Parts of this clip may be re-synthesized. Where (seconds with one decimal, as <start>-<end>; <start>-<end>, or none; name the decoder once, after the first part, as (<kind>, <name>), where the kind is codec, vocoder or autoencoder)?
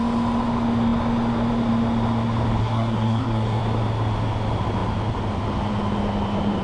2.6-3.6 (codec, SNAC)